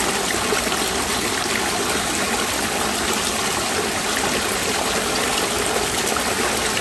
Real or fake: real